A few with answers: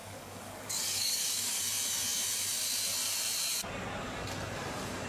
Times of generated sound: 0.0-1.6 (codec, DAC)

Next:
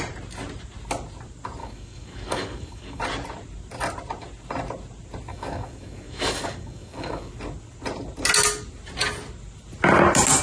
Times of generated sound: 1.6-3.0 (codec, DAC); 5.3-7.3

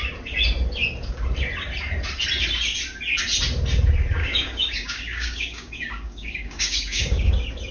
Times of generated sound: 4.2-7.3 (codec, DAC)

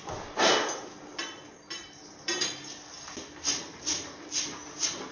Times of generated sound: none